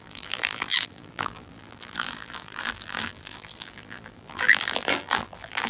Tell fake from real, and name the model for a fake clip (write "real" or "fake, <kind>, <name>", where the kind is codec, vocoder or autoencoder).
fake, vocoder, BigVGAN v2